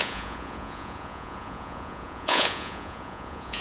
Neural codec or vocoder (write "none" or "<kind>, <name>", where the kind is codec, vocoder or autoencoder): vocoder, Vocos